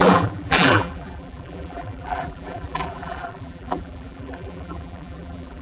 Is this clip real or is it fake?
fake